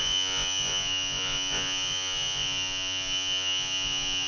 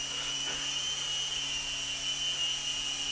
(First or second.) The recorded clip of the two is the second